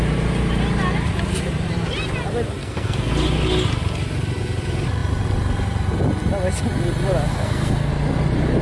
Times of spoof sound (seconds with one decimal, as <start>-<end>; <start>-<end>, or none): 2.6-3.1; 7.3-7.9